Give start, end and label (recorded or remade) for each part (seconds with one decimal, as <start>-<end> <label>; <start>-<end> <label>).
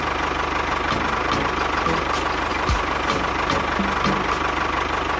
0.0-5.2 recorded